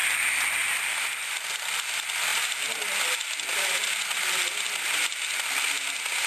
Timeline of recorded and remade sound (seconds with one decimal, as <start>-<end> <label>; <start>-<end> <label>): 0.0-6.3 recorded